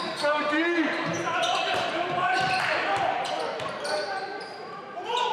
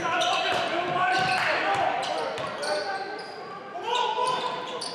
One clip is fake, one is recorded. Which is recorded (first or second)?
second